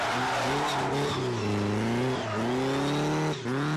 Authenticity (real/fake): real